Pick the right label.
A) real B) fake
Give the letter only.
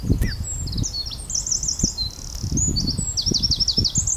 A